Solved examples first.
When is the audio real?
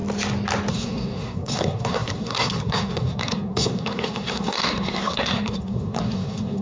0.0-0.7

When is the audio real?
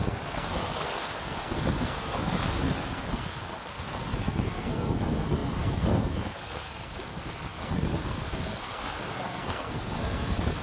none